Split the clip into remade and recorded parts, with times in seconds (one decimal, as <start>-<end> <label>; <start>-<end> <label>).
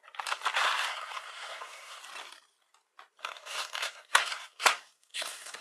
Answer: 0.0-0.9 recorded; 0.9-2.0 remade; 2.0-3.2 recorded; 3.2-5.6 remade